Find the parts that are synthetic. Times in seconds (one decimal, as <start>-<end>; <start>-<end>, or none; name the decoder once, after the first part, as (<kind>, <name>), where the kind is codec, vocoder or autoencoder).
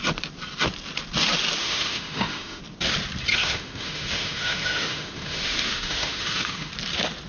1.6-2.6 (autoencoder, DAC-VAE); 3.3-6.7